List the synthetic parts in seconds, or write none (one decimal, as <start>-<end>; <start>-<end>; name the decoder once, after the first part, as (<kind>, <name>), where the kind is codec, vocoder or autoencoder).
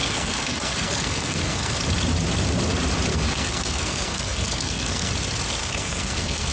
0.0-1.8 (codec, SNAC); 3.1-5.1; 5.6-6.5